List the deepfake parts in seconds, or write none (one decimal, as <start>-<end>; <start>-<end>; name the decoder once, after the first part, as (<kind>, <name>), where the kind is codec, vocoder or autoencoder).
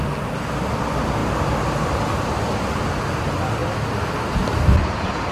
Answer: none